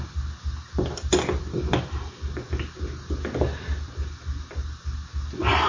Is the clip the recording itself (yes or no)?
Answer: yes